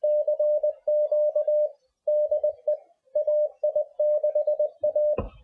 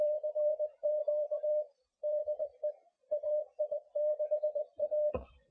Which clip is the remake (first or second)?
second